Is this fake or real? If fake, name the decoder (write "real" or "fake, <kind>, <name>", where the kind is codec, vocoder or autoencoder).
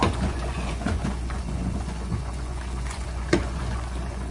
fake, vocoder, Vocos